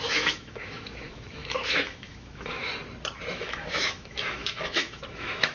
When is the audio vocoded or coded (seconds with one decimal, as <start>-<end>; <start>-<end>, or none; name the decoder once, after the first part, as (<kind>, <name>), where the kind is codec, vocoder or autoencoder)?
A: 0.0-2.7 (autoencoder, DAC-VAE); 3.3-5.5